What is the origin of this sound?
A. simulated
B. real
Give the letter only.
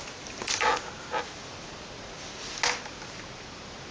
B